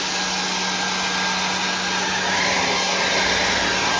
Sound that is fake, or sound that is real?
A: real